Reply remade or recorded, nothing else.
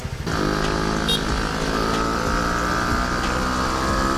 recorded